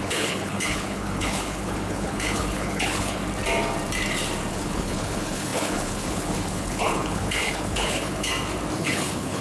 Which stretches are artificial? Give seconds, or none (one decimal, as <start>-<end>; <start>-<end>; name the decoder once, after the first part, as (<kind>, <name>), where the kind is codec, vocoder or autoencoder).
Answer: 0.0-3.2 (codec, HILCodec); 4.5-8.3; 8.8-9.4